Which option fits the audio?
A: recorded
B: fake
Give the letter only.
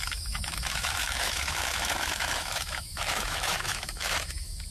B